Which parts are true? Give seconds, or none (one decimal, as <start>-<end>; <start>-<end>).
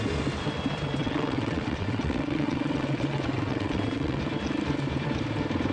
0.0-1.0; 4.2-5.7